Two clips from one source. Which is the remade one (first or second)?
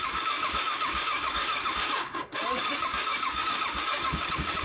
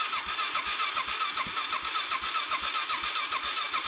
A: first